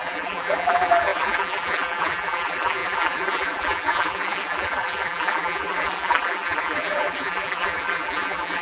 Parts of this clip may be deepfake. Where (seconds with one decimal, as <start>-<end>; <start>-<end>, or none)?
0.0-8.6